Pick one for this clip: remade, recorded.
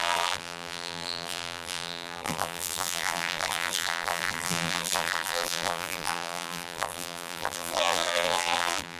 remade